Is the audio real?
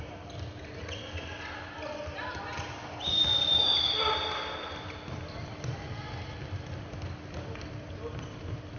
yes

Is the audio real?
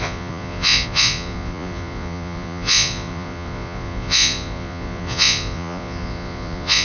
no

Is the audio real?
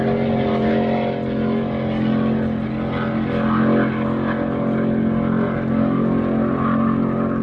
yes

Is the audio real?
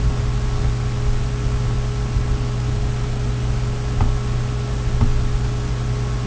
yes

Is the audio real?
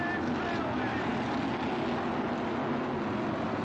yes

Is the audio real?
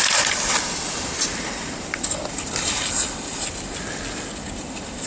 yes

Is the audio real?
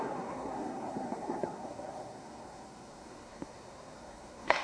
no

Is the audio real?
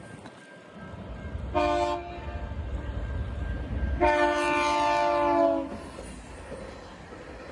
yes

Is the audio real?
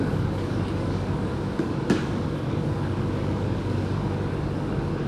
no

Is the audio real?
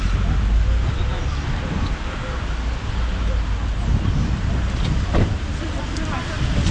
yes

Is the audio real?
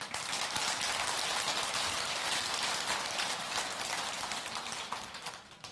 yes